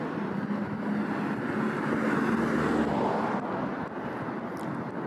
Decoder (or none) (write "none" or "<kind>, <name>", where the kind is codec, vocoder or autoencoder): none